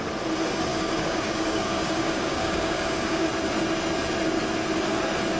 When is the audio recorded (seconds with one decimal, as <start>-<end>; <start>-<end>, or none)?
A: 0.0-0.7; 3.3-5.4